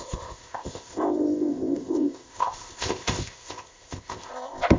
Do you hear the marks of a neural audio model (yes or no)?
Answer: yes